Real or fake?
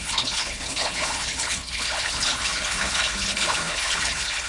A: fake